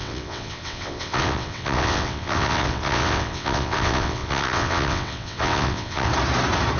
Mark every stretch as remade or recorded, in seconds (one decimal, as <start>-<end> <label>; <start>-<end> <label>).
0.0-6.1 remade; 6.1-6.8 recorded